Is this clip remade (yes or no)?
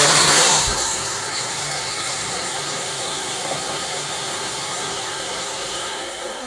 yes